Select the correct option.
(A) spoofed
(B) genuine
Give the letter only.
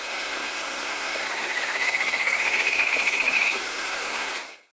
A